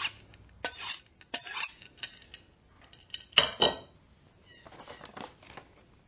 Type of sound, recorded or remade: recorded